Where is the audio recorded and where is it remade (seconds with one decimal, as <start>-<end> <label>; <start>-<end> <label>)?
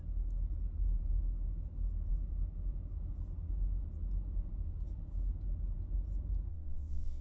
0.0-6.5 recorded; 6.5-7.2 remade